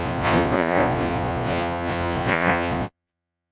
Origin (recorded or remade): remade